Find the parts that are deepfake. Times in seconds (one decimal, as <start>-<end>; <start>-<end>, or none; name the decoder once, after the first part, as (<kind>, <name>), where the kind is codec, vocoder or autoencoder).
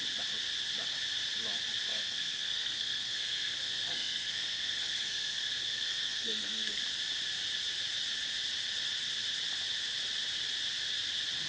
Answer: 1.9-6.8 (codec, SNAC)